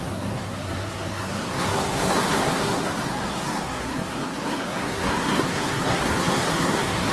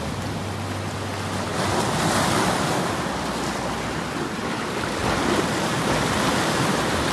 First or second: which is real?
second